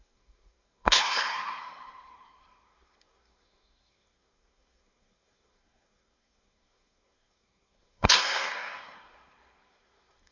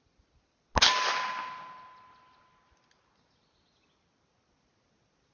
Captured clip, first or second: second